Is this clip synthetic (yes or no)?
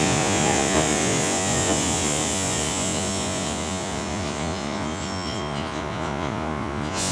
yes